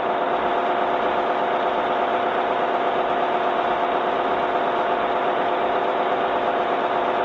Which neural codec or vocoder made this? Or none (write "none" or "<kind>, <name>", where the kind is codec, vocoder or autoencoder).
none